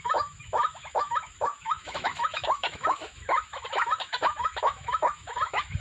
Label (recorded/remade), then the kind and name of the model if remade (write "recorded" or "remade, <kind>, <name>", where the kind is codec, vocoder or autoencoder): remade, autoencoder, DAC-VAE